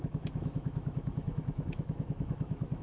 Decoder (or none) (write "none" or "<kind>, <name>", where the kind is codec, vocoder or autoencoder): autoencoder, DAC-VAE